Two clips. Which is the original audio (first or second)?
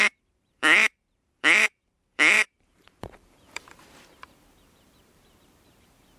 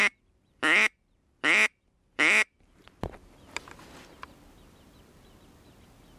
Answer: second